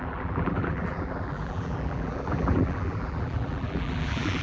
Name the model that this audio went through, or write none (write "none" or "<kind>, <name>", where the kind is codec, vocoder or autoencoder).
vocoder, BigVGAN v2